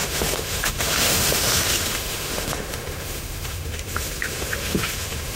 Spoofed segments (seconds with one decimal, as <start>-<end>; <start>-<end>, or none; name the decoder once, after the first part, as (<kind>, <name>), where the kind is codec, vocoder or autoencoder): 0.0-5.4 (autoencoder, DAC-VAE)